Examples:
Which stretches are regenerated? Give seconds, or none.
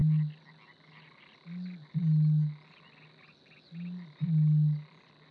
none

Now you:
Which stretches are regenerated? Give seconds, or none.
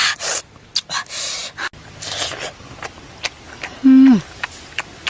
none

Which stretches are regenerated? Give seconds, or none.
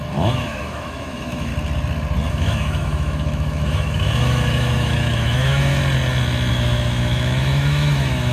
0.0-1.5 (autoencoder, DAC-VAE); 2.3-5.7; 6.5-8.3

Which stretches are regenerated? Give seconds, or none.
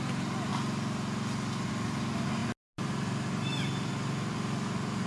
none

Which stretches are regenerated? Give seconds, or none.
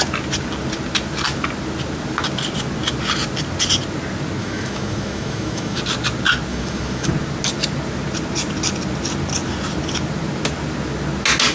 4.4-5.8 (autoencoder, DAC-VAE); 6.5-7.1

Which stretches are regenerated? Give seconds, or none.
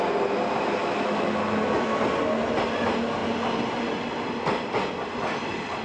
0.8-2.0 (autoencoder, DAC-VAE)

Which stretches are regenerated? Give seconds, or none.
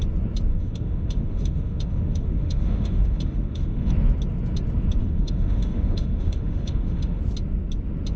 0.5-3.9 (autoencoder, DAC-VAE); 5.0-7.2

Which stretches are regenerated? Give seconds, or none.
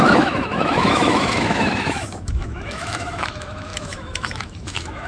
0.0-5.1 (autoencoder, DAC-VAE)